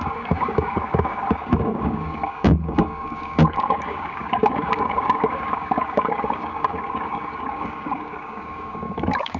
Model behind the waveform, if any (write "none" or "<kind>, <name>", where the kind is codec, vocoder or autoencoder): codec, DAC